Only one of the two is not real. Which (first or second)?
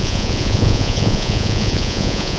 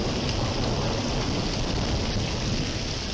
first